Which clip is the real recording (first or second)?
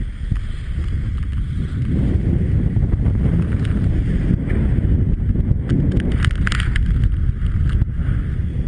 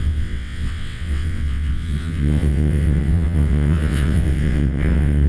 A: first